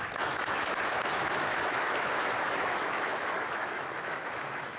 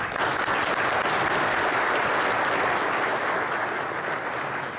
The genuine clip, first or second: second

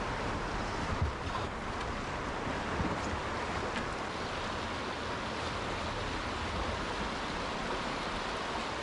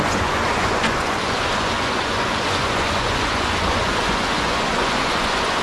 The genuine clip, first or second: first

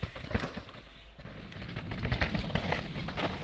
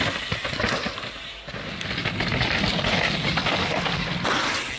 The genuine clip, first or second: second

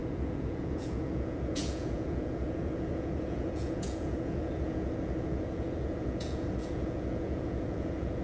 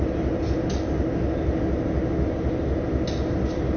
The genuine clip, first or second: second